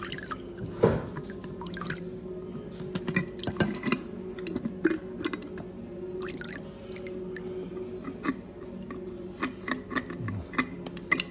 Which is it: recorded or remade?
recorded